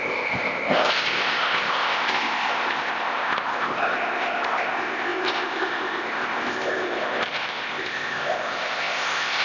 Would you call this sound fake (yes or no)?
yes